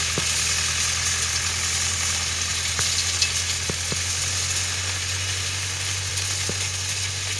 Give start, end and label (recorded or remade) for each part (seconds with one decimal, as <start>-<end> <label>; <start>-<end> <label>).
0.0-7.4 recorded